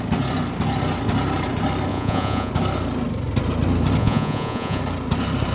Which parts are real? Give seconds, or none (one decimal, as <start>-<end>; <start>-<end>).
0.0-1.9; 2.5-4.0; 4.8-5.5